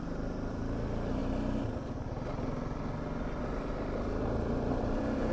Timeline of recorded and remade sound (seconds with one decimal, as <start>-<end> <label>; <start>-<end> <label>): 0.0-1.2 remade; 1.2-4.2 recorded; 4.2-5.3 remade